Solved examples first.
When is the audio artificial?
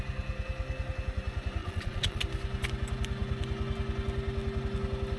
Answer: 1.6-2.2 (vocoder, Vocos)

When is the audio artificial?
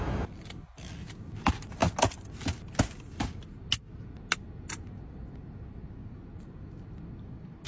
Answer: none